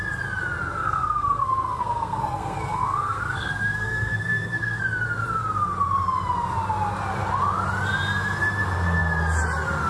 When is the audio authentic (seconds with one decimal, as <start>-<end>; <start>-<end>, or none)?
0.0-0.8; 4.8-9.9